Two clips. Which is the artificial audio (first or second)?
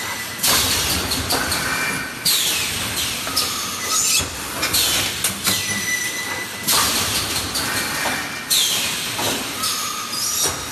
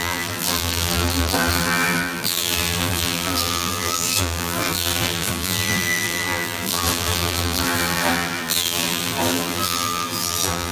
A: second